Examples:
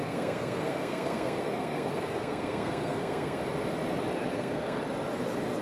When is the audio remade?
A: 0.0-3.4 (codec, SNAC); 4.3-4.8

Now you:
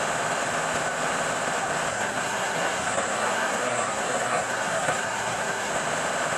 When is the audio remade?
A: 1.9-5.7 (codec, SNAC)

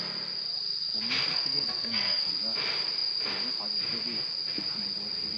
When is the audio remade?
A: 1.3-2.3 (codec, SNAC)

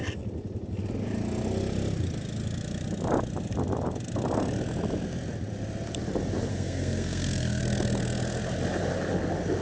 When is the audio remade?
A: 6.5-7.6 (codec, SNAC)